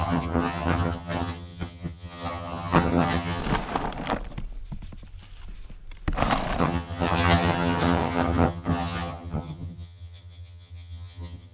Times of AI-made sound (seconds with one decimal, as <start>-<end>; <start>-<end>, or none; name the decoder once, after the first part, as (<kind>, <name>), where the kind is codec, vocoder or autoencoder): 0.0-3.4 (vocoder, HiFi-GAN); 6.6-11.5